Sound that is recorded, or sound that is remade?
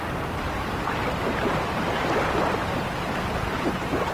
remade